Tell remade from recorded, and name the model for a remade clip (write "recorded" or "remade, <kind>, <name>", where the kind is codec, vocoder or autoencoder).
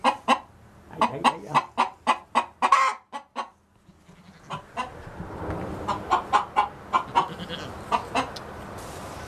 recorded